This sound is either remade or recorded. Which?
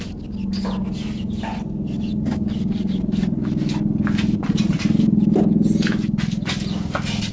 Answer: recorded